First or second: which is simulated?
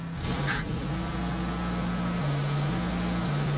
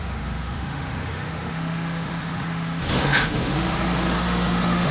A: second